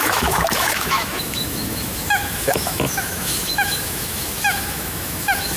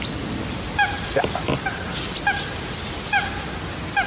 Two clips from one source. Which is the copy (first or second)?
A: first